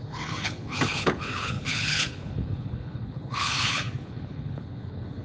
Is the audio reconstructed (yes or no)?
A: yes